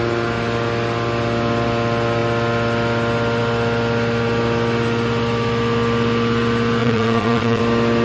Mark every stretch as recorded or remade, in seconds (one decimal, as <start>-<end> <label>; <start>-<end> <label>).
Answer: 0.0-6.8 recorded; 6.8-7.6 remade; 7.6-8.0 recorded

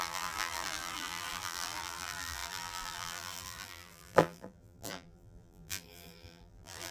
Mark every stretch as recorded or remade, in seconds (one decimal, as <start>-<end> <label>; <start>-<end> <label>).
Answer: 0.0-6.9 remade